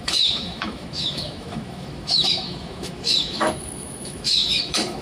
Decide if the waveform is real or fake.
fake